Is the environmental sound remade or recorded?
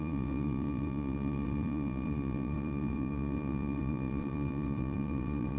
remade